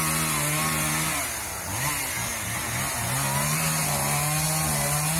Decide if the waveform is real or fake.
real